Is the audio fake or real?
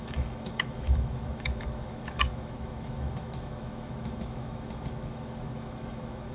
fake